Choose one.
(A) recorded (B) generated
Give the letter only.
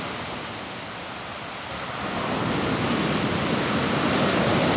A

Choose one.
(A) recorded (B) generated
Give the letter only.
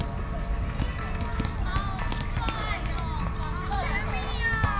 A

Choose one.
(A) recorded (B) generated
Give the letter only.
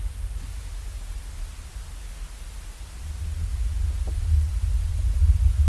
A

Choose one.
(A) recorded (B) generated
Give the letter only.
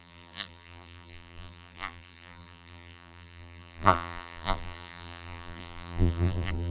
B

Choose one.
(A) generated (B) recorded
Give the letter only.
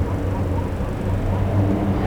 B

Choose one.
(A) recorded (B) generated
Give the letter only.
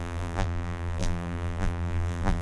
B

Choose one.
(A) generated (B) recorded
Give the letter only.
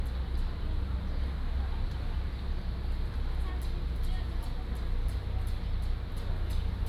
B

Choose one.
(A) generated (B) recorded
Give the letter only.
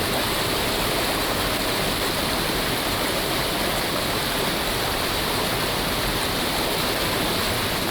B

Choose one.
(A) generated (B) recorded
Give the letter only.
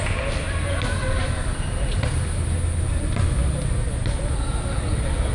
B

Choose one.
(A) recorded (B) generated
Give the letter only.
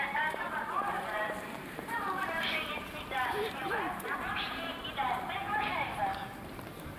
B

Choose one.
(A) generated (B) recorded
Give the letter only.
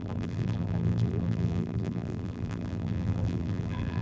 A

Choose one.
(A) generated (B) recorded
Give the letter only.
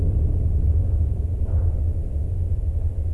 B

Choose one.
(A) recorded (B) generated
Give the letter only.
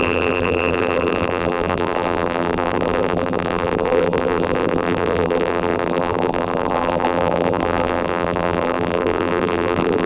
B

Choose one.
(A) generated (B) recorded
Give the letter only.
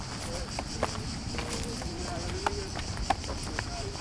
A